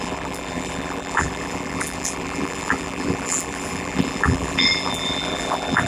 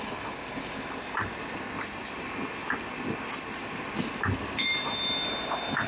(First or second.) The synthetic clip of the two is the first